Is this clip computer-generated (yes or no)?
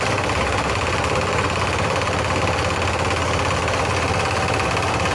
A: no